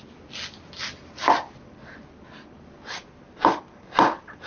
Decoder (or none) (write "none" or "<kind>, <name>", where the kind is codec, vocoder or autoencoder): none